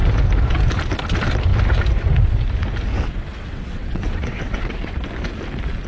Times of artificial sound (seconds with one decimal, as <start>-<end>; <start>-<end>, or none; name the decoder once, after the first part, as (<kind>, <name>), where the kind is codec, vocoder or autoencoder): 2.9-4.9 (vocoder, WaveNeXt)